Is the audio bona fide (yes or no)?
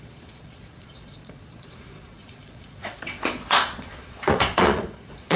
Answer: no